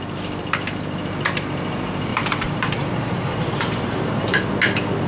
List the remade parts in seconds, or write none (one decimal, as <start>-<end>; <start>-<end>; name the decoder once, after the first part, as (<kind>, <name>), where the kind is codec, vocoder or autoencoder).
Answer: 2.1-4.5 (vocoder, BigVGAN v2)